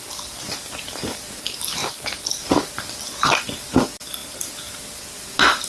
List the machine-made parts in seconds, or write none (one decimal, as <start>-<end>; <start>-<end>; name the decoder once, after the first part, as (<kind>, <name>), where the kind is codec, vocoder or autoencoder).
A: none